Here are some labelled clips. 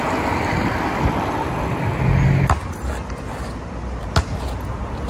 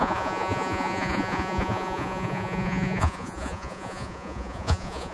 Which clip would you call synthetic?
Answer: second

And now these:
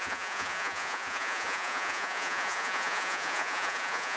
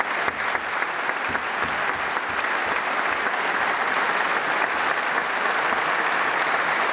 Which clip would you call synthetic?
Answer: first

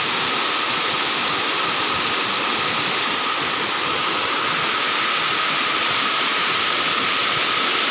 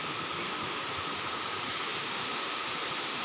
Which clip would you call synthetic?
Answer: second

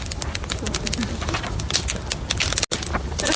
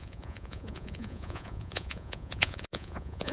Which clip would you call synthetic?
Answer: second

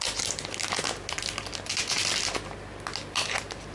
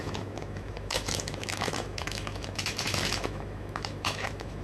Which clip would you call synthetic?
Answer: second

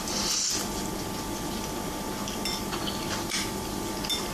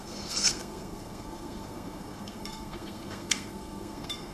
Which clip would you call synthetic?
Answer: second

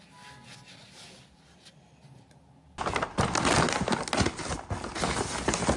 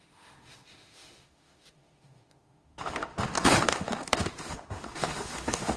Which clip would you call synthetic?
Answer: second